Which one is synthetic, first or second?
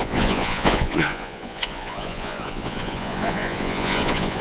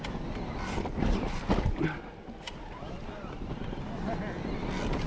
first